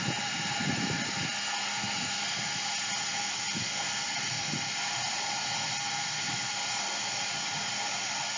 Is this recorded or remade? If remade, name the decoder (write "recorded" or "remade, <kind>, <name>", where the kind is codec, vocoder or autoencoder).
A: recorded